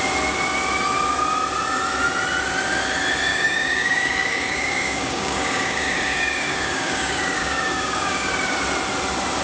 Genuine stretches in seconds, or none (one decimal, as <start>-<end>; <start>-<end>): 0.0-3.3; 8.3-9.4